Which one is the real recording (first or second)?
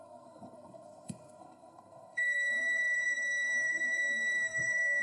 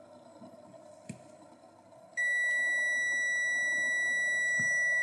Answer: second